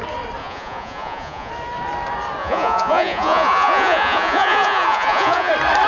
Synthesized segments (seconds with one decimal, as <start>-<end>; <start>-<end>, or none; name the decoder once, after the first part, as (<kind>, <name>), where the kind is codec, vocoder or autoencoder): 0.4-1.5 (vocoder, Vocos); 2.4-5.5